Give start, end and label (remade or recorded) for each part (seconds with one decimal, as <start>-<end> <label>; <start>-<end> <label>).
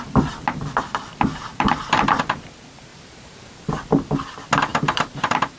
0.0-1.1 recorded; 1.1-2.2 remade; 2.2-2.9 recorded; 2.9-3.7 remade; 3.7-4.7 recorded; 4.7-5.6 remade